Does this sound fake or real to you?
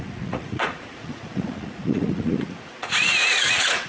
fake